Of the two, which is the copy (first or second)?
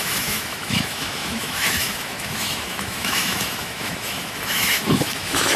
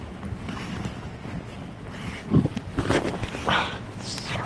first